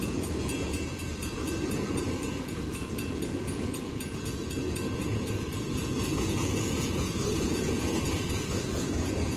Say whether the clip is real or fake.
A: fake